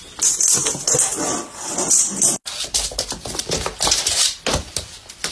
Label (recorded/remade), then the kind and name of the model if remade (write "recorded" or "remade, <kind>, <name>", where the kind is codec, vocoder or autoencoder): recorded